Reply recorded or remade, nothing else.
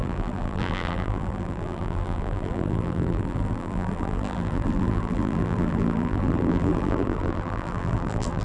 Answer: remade